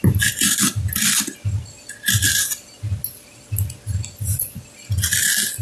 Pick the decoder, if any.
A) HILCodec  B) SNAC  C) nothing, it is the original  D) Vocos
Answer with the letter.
C